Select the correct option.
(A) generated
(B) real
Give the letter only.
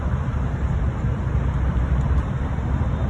B